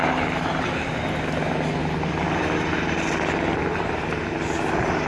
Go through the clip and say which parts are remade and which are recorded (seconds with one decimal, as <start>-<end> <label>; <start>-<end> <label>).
0.0-5.1 recorded